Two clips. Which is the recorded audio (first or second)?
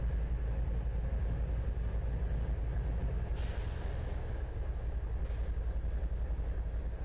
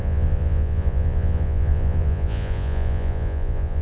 first